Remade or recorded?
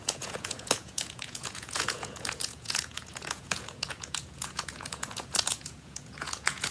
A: remade